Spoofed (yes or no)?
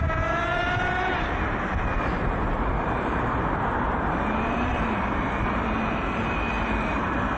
yes